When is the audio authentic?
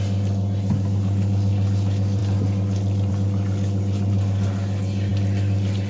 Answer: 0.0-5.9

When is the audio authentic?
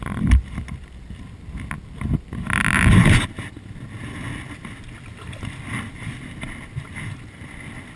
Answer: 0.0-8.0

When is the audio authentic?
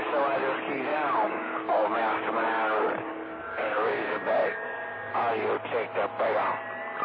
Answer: 0.0-0.9; 5.1-7.0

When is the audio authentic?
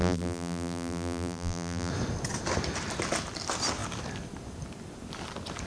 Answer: 1.9-5.7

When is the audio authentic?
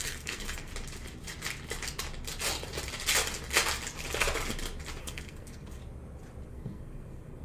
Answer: 0.7-5.0; 5.8-6.5